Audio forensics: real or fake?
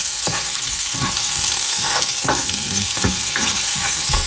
fake